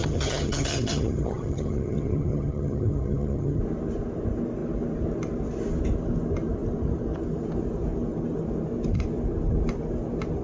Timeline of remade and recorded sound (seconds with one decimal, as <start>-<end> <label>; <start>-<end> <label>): 0.0-3.6 remade; 3.6-10.4 recorded